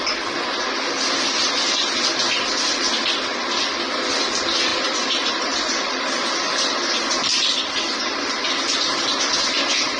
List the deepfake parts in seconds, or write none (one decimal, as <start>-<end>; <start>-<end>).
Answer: 4.7-6.0; 7.3-8.2